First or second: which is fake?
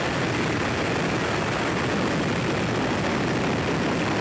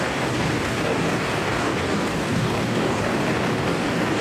second